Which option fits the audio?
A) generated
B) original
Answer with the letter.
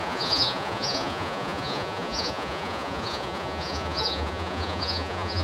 A